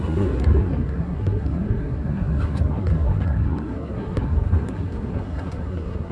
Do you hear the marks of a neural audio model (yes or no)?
yes